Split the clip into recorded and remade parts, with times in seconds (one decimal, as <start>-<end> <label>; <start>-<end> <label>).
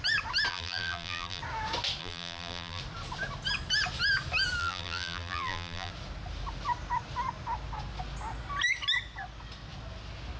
0.0-0.5 recorded; 0.5-1.4 remade; 1.4-2.0 recorded; 2.0-2.8 remade; 2.8-4.6 recorded; 4.6-5.9 remade; 5.9-10.4 recorded